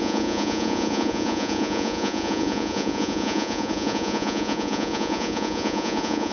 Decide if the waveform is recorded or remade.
remade